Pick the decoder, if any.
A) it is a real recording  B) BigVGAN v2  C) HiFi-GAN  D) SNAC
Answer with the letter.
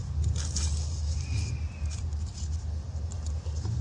A